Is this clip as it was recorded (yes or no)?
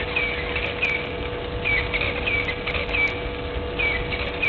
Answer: yes